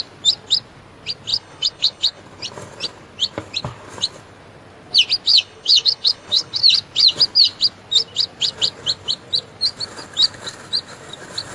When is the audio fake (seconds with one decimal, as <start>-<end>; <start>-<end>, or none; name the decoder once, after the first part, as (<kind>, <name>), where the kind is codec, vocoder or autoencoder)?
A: 1.3-2.2 (codec, HILCodec); 5.3-6.6